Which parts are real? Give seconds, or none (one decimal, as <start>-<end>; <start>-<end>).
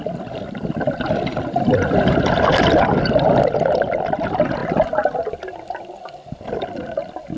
0.0-7.4